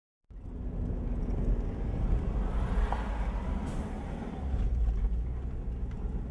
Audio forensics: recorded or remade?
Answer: recorded